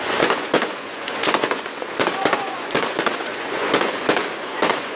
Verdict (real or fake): fake